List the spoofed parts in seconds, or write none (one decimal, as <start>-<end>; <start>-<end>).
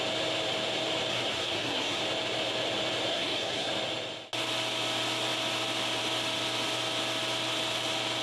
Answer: 1.1-2.0; 3.1-3.7